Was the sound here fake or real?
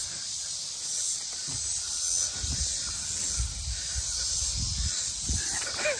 real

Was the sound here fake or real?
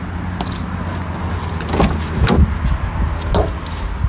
real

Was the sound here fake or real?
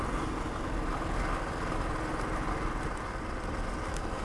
real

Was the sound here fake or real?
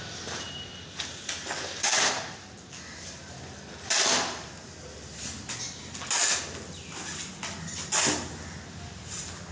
real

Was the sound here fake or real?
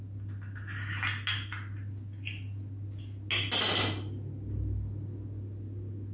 real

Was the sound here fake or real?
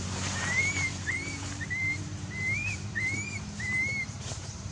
fake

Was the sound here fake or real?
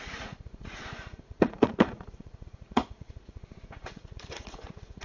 fake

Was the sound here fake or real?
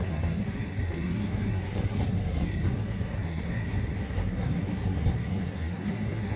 fake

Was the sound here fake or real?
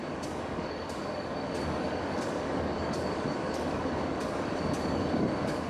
fake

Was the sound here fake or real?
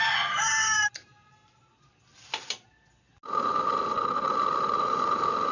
real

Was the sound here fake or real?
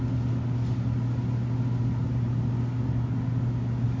real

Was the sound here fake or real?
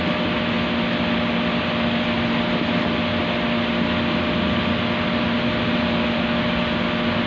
real